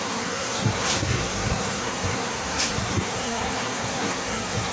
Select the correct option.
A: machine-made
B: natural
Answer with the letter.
A